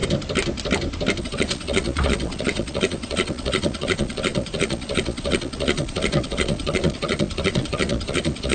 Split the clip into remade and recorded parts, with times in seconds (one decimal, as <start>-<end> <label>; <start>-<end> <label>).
0.0-1.2 recorded; 1.2-8.5 remade